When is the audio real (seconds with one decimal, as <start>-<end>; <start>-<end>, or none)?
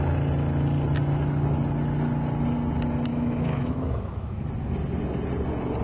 0.0-3.1; 4.4-5.8